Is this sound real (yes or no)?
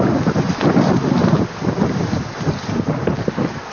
yes